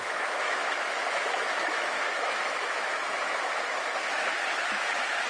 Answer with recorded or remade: remade